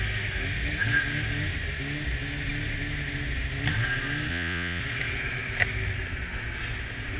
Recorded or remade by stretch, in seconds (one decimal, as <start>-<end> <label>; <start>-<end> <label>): 0.0-4.3 recorded; 4.3-4.8 remade; 4.8-7.2 recorded